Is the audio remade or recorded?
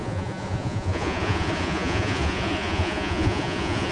remade